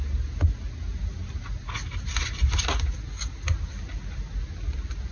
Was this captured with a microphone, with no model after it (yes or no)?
yes